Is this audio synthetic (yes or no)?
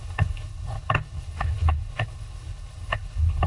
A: yes